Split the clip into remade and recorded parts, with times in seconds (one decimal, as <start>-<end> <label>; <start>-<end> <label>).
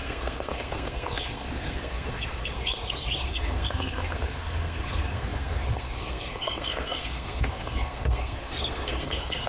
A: 0.0-9.5 remade